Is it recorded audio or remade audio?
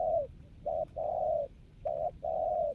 recorded